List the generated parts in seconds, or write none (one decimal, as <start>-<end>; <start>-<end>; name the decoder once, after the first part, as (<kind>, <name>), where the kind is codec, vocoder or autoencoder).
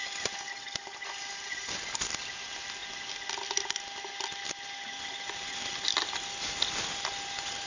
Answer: none